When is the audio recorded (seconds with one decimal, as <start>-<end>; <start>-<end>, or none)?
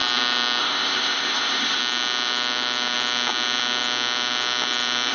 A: 0.0-0.6; 1.8-5.1